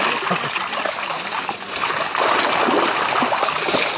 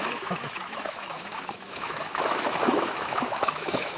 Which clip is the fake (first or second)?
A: second